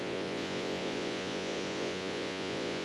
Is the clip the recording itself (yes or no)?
no